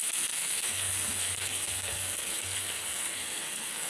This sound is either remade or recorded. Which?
remade